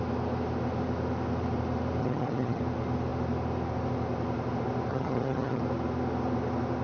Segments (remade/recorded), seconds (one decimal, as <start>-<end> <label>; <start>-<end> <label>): 0.0-2.0 recorded; 2.0-2.6 remade; 2.6-4.9 recorded; 4.9-5.6 remade; 5.6-6.8 recorded